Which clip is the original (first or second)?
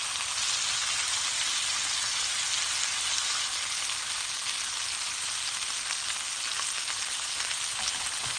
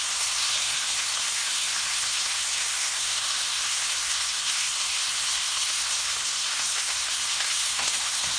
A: first